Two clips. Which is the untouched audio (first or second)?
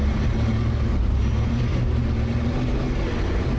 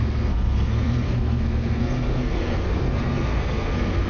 first